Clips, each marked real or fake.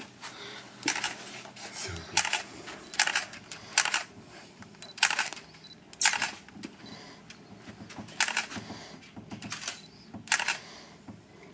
real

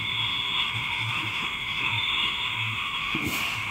fake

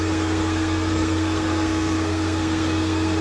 fake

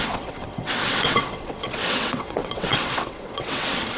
fake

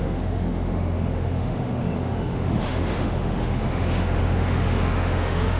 fake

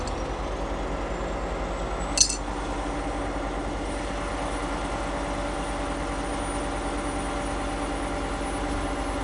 real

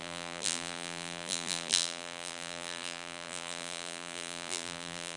fake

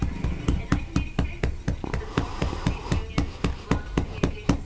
real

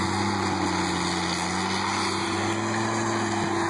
real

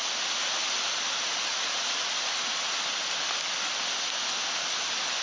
real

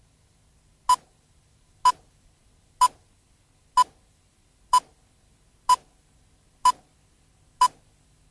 real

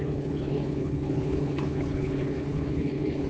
fake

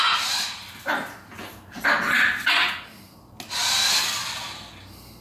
real